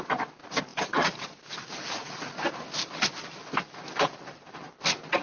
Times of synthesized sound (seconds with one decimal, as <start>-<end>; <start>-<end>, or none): none